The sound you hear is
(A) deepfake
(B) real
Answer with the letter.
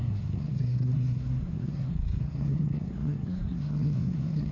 A